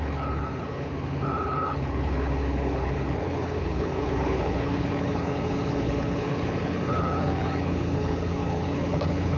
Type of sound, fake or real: fake